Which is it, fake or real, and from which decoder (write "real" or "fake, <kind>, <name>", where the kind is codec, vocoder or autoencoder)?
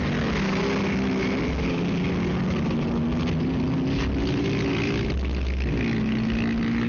real